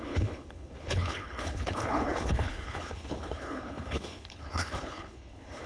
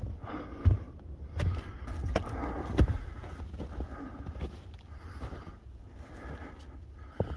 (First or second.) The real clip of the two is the second